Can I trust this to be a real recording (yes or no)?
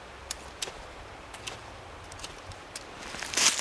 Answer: no